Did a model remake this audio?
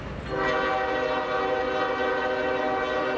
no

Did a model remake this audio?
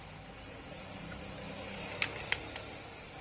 no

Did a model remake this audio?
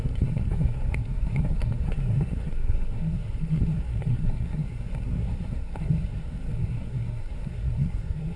yes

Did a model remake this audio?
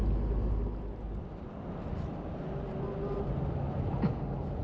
no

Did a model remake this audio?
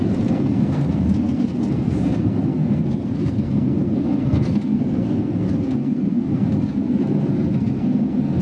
yes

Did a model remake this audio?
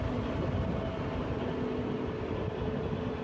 no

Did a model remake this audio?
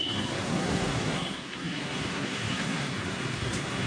yes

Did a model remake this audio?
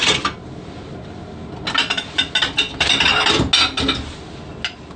no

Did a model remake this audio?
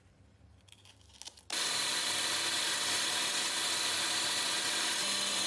no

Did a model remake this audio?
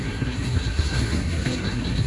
yes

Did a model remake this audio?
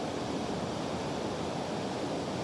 no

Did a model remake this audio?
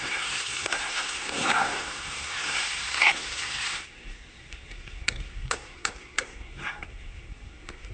yes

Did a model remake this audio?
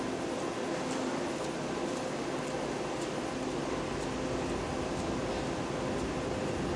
no